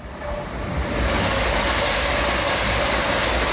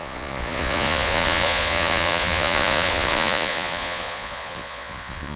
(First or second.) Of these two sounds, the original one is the first